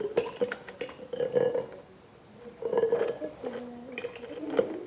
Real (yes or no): yes